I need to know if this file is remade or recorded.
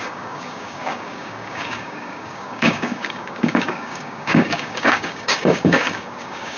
remade